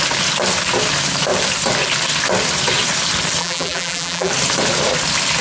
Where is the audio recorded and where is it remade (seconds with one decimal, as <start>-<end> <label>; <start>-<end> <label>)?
0.0-3.4 recorded; 3.4-4.3 remade; 4.3-5.4 recorded